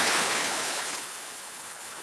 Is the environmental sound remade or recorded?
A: remade